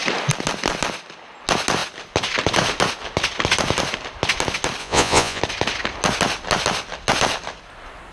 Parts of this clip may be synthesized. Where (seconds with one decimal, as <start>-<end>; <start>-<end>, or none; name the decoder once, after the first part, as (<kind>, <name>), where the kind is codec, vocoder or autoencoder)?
4.8-5.4 (vocoder, Vocos)